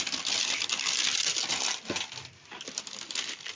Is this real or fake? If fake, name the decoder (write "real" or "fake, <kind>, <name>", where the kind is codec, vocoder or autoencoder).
real